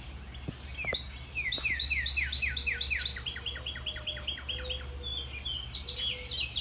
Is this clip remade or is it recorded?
recorded